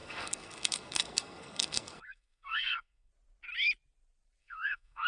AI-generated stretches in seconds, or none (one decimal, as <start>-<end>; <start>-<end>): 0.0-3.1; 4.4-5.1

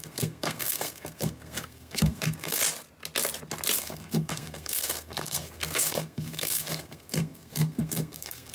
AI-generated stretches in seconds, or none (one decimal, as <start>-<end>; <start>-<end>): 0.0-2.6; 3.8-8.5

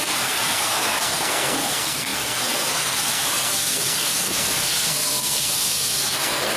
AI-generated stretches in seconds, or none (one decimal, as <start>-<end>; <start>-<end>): 0.0-6.6

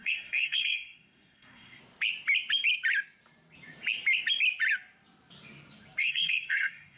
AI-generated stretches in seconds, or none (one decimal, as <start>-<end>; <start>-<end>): 0.0-1.8; 6.0-7.0

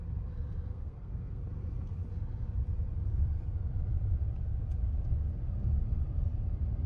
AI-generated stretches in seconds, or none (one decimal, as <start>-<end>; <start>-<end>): 0.7-1.4